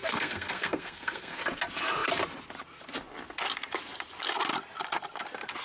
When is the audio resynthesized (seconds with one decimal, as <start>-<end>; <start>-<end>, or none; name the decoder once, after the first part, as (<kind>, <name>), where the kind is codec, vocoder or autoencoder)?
0.0-1.4 (codec, SNAC)